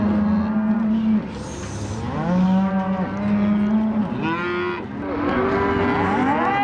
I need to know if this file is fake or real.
real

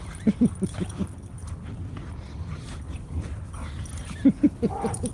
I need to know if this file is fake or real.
real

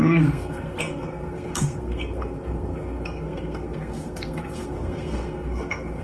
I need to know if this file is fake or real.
fake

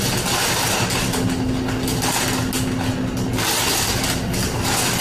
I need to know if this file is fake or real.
real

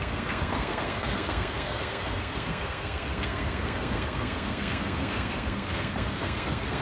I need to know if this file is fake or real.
fake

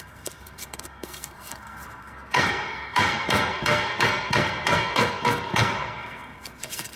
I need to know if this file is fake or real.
fake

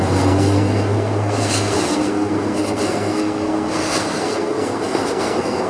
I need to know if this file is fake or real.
fake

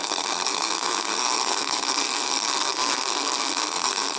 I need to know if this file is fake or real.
fake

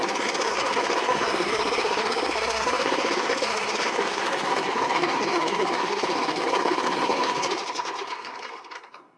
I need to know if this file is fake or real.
fake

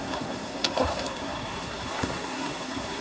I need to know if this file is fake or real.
fake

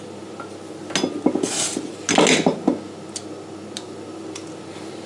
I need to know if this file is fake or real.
real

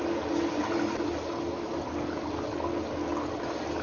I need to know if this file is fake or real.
real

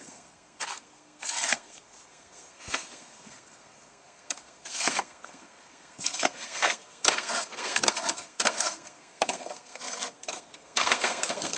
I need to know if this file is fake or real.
fake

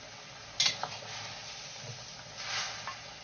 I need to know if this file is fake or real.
real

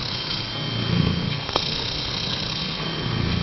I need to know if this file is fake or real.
fake